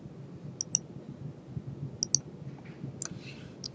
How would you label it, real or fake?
real